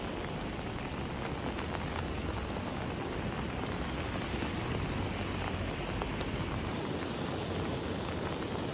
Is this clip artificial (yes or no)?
no